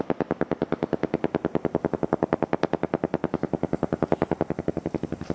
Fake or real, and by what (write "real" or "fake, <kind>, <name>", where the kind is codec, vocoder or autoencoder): real